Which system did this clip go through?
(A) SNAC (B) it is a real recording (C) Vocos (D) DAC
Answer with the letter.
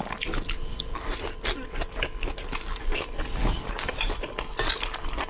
B